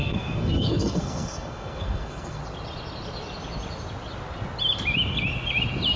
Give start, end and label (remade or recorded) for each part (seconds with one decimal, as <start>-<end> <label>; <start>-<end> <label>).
0.0-2.4 remade; 2.4-6.0 recorded